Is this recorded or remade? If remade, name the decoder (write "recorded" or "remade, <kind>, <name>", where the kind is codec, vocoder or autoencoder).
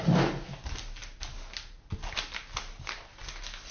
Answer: recorded